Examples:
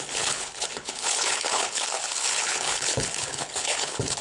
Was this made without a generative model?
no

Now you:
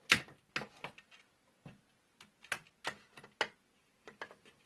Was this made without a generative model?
yes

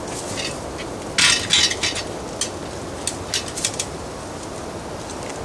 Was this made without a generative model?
yes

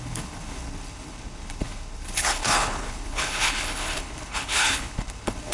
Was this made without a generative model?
no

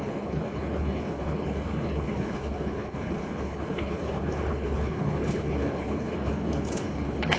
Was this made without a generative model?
no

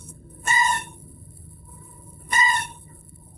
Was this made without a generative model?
no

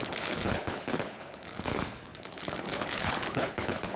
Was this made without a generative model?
no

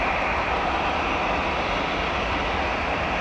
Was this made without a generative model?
yes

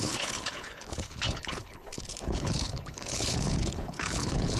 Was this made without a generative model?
no